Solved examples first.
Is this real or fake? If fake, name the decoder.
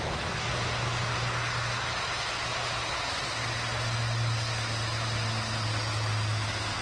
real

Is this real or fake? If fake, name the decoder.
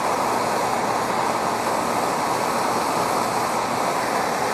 real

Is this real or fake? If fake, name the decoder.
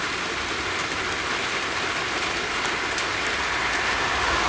real